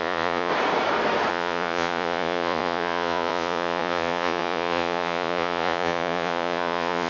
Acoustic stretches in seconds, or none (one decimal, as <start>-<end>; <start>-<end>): 0.5-1.3